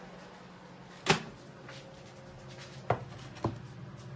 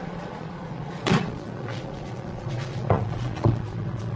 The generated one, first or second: second